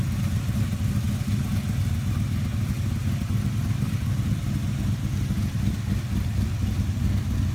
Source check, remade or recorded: recorded